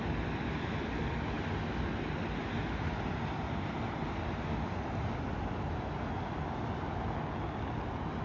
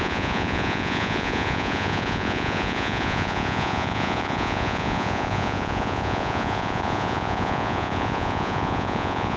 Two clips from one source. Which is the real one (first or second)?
first